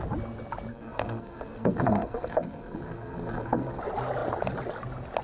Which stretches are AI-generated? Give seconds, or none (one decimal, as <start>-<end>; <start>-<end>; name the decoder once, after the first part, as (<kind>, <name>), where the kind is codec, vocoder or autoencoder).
0.7-3.8 (codec, SNAC)